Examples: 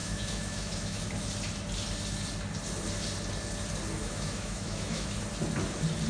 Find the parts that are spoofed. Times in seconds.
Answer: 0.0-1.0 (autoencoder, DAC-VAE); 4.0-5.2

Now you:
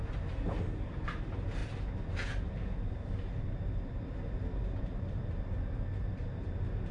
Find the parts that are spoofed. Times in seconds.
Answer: none

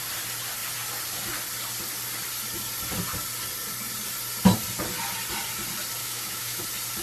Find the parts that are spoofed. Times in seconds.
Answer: 6.0-6.6 (autoencoder, DAC-VAE)

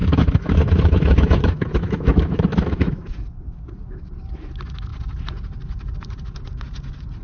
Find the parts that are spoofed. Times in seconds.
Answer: 0.0-3.1 (autoencoder, DAC-VAE)

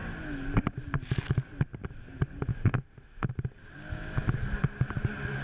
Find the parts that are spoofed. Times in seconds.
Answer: 2.5-3.3 (autoencoder, DAC-VAE)